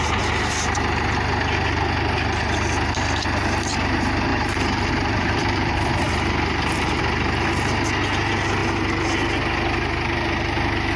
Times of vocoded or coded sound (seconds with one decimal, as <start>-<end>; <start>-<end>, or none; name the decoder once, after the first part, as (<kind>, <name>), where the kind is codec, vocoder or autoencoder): 4.3-7.0 (vocoder, BigVGAN v2)